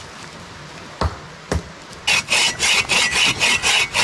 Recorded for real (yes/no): yes